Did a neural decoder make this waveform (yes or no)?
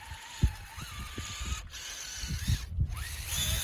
yes